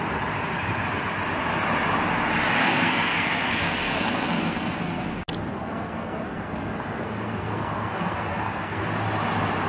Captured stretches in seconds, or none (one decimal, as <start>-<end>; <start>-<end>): 0.0-2.6; 5.0-5.5; 8.8-9.7